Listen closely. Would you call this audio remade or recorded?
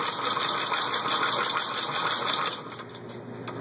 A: recorded